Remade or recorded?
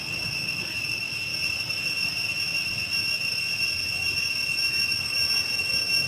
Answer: recorded